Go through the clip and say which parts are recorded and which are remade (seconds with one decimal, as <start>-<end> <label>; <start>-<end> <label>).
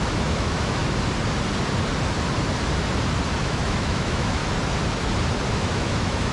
0.0-0.8 remade; 0.8-3.4 recorded; 3.4-4.4 remade; 4.4-5.5 recorded; 5.5-6.3 remade